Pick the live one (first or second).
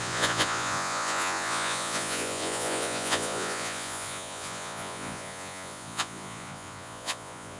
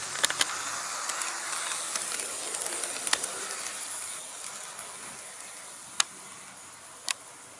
second